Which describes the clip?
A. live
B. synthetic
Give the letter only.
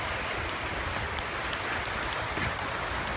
A